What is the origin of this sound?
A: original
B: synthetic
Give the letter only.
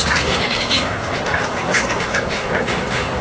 B